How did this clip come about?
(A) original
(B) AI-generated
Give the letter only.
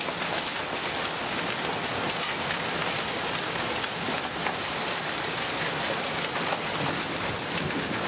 A